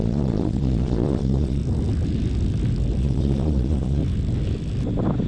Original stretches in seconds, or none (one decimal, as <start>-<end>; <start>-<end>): 1.6-3.0; 4.0-5.3